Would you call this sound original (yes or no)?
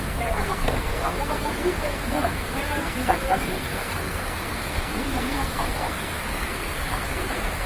no